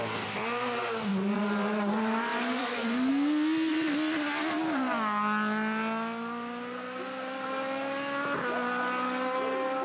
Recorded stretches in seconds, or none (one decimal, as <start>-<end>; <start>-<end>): 0.0-1.1; 1.8-2.3; 3.1-3.7; 4.4-9.8